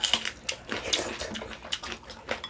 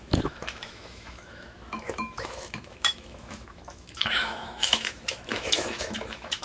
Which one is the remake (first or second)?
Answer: second